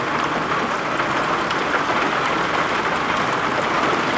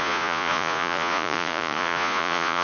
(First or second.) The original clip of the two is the first